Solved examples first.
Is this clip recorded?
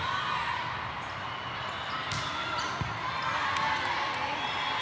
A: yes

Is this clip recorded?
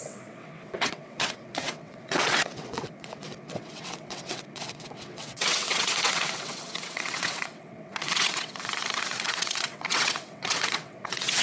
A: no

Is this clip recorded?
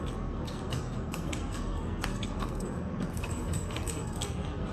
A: no